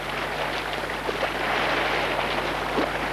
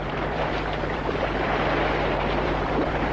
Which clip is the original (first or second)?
first